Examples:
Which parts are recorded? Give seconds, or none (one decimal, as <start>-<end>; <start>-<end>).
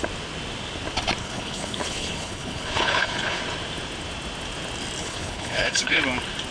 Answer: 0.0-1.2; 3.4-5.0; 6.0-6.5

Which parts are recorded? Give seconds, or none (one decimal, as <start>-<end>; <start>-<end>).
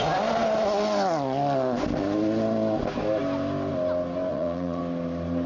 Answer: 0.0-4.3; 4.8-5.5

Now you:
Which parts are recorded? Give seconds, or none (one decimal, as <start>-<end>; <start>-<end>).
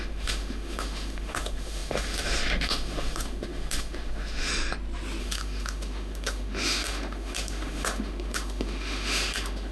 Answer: 4.5-5.2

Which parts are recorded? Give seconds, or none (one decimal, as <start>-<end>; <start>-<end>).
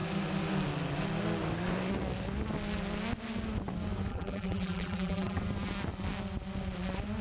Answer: 0.0-4.1; 5.4-7.2